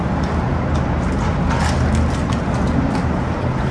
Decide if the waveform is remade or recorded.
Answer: recorded